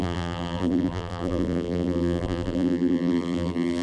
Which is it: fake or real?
fake